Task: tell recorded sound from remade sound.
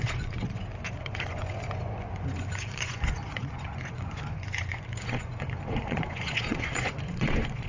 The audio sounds remade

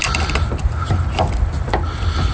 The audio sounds recorded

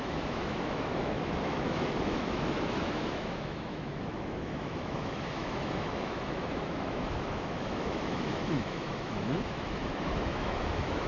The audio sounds remade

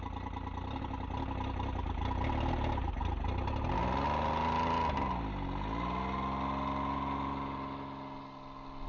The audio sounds recorded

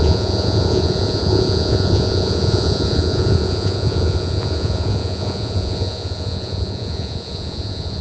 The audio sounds remade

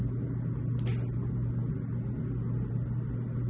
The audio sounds recorded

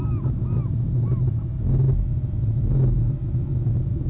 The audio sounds recorded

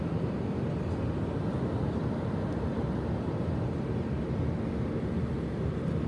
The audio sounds recorded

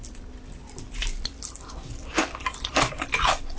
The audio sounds recorded